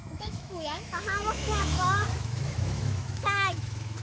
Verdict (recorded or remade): remade